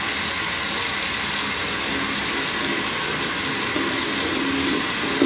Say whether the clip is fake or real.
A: real